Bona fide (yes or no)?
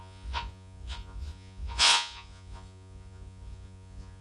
no